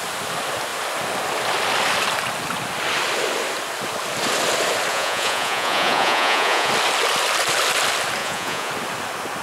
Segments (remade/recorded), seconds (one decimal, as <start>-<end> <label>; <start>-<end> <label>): 0.0-4.9 recorded; 4.9-6.7 remade; 6.7-8.2 recorded; 8.2-8.7 remade; 8.7-9.4 recorded